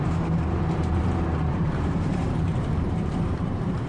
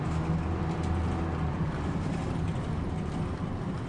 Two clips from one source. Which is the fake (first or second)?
first